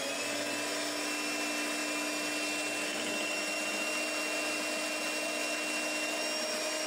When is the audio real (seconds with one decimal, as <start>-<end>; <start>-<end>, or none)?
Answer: 0.0-6.9